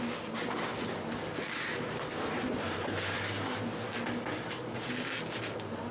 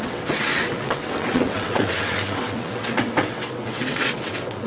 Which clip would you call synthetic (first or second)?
second